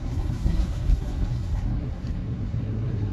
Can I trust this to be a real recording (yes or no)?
no